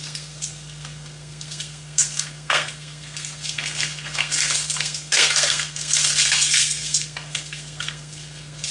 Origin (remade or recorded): remade